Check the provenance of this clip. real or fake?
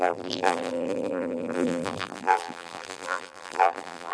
fake